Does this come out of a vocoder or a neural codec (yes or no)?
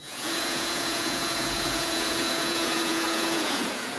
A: yes